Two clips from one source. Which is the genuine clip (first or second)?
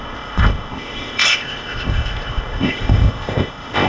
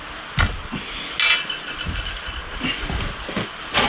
second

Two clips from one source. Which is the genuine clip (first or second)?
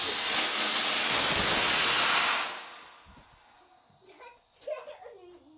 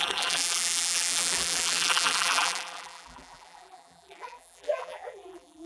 first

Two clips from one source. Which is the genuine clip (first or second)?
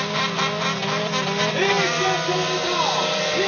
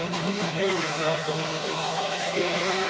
first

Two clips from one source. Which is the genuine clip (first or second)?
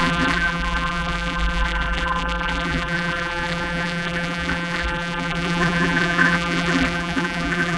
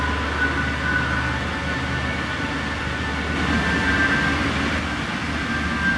second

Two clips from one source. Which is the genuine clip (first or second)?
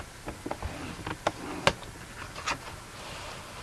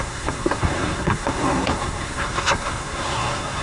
first